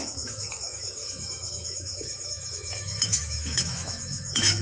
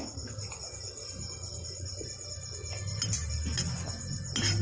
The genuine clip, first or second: second